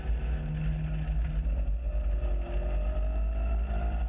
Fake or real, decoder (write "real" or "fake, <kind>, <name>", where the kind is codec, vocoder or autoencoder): real